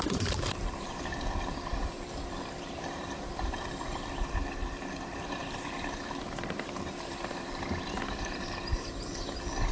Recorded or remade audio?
remade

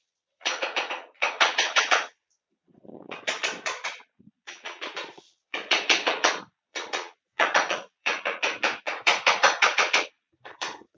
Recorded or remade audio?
remade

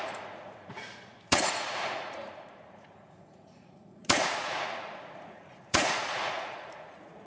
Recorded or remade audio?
remade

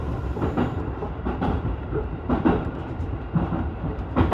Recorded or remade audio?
remade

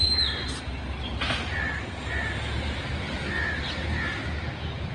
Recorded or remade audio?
recorded